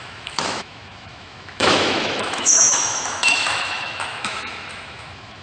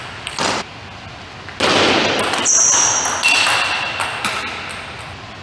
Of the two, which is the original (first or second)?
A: second